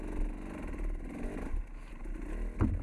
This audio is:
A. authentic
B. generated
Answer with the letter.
A